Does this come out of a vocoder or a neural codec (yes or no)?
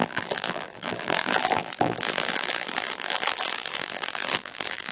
yes